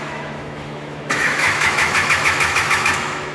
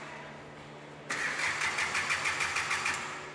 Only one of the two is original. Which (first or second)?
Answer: second